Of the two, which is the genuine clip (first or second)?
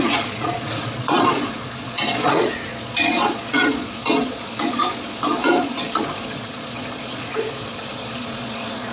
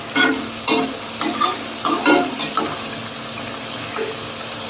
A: second